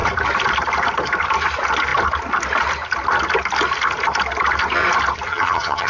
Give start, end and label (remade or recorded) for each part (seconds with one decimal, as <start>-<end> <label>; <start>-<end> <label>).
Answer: 0.0-5.3 recorded; 5.3-5.9 remade